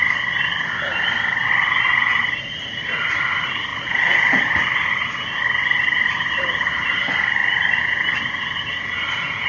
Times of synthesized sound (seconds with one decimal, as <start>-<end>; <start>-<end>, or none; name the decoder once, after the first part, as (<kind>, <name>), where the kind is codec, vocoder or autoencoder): 3.7-4.4 (vocoder, Vocos)